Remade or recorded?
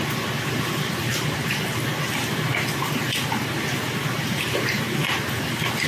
recorded